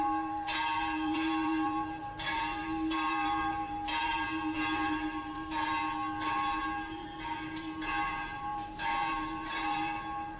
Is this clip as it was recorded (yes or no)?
no